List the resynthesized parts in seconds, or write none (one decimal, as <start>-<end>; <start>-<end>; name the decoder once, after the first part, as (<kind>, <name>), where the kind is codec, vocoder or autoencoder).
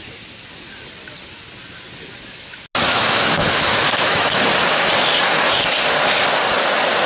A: 2.9-4.4 (autoencoder, DAC-VAE)